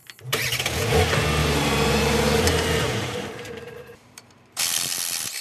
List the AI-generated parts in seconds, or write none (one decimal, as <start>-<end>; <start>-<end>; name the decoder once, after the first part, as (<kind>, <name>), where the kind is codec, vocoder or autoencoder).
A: 0.0-0.6 (vocoder, BigVGAN v2); 1.4-4.6